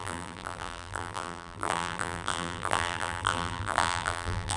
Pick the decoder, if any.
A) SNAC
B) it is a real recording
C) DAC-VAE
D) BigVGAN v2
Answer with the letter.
D